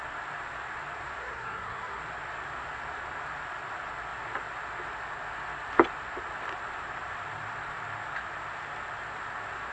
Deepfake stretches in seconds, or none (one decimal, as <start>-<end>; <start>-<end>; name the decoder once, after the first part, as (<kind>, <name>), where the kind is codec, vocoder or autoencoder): 1.2-2.0 (codec, SNAC)